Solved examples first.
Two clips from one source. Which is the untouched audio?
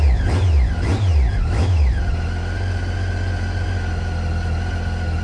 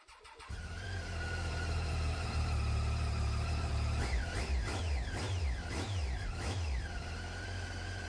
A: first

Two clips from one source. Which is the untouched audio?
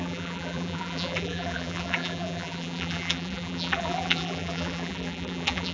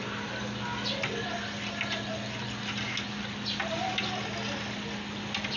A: second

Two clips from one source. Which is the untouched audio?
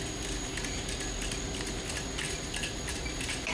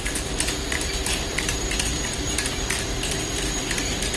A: first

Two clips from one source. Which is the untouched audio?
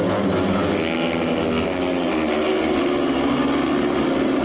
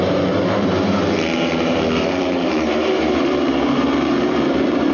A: first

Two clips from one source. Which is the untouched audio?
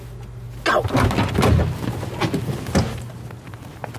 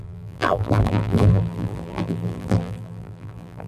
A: first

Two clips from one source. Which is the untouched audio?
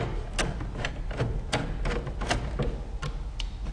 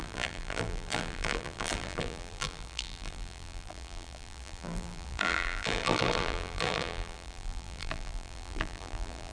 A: first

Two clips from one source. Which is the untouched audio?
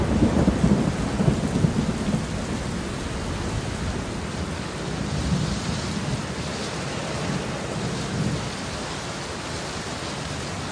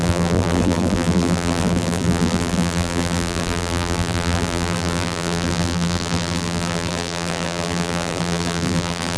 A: first